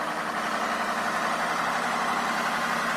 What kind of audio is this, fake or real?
real